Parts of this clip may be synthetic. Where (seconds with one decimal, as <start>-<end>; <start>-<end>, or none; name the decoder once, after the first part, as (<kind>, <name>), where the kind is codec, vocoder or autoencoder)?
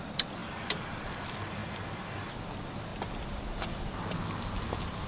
0.0-0.4 (vocoder, BigVGAN v2); 0.9-1.6; 2.2-2.9; 3.9-5.1